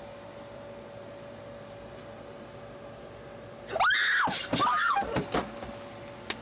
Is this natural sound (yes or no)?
yes